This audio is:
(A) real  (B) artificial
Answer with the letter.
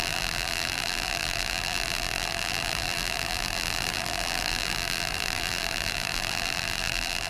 B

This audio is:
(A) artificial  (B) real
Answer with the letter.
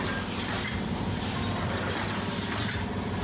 B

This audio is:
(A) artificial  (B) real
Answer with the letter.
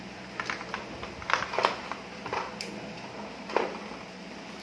B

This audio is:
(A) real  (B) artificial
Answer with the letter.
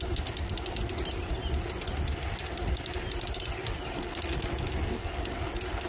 A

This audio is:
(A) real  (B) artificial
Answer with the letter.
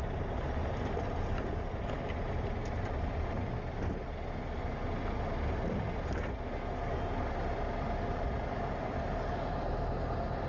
A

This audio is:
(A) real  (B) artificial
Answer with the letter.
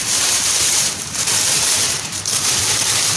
B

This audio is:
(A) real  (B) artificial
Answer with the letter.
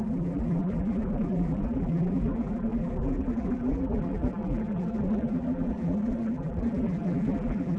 B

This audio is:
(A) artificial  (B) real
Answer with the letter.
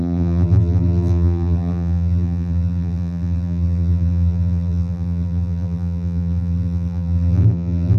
A